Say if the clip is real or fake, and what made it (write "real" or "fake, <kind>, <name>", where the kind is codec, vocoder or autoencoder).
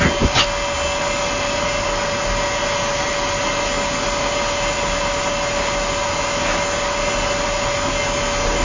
real